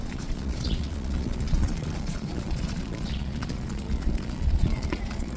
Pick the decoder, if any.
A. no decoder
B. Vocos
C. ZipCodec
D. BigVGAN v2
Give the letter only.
B